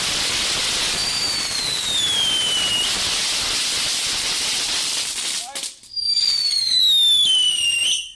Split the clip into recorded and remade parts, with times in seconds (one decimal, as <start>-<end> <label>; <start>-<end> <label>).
0.0-8.1 recorded